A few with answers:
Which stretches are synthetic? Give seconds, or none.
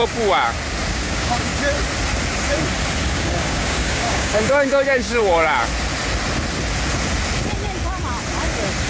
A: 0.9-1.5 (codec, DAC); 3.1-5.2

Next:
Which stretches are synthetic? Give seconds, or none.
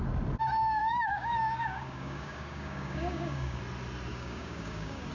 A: 0.6-3.6 (codec, DAC); 4.1-5.1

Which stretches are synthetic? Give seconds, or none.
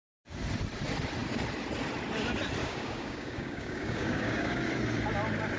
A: 2.6-4.6 (codec, DAC)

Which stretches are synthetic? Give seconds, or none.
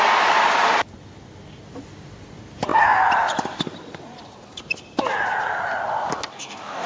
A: 6.3-6.9 (codec, DAC)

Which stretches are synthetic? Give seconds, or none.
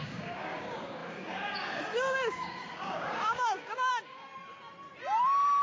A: 0.0-4.3 (codec, DAC)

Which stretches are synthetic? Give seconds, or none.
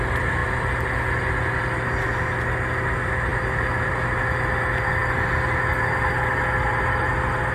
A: none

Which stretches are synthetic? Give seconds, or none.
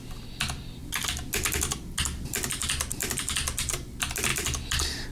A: none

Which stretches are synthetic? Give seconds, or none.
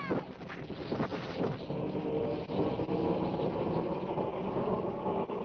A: 4.3-5.4 (codec, DAC)